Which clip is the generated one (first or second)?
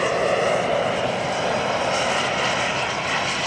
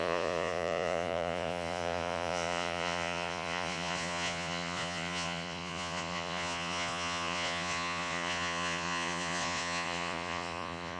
second